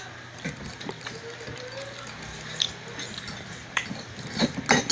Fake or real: real